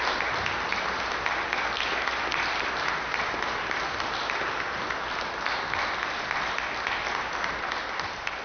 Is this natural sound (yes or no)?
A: yes